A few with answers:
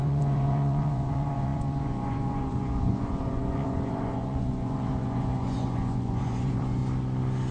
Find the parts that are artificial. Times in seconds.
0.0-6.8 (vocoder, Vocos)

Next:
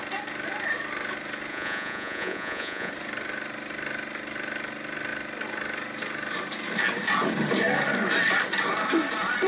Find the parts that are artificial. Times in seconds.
1.5-2.9 (vocoder, Vocos)

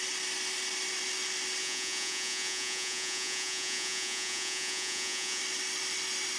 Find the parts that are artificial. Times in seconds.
1.6-5.4 (vocoder, Vocos)

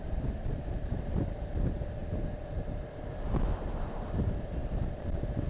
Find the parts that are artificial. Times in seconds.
0.0-2.0 (vocoder, BigVGAN v2); 3.6-5.5